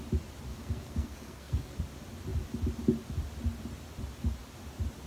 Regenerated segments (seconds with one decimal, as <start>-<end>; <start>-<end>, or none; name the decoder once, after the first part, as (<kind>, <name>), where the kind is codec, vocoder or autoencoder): 0.5-1.8 (codec, SNAC)